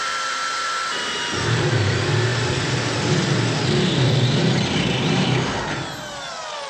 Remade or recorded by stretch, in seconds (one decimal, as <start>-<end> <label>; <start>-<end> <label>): 0.0-0.4 remade; 0.4-0.9 recorded; 0.9-2.3 remade; 2.3-6.3 recorded; 6.3-6.7 remade